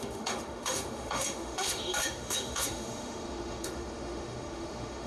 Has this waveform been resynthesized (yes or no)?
yes